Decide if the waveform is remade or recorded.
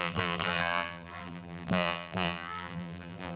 remade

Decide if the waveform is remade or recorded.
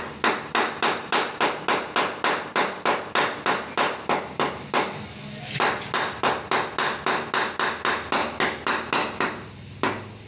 recorded